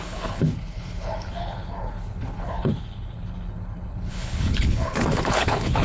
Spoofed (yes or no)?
yes